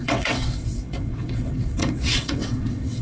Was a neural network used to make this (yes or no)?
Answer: yes